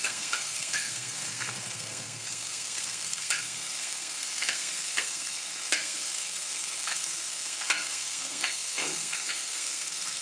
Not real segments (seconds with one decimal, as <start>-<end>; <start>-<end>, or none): 0.0-10.2